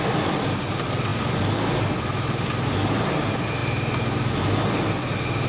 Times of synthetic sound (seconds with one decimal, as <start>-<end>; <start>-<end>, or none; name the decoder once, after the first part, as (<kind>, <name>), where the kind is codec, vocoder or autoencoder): none